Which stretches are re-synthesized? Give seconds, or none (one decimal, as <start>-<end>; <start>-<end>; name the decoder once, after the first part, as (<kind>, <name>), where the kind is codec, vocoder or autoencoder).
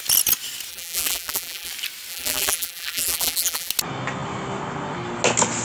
0.7-1.7 (vocoder, BigVGAN v2); 2.1-3.7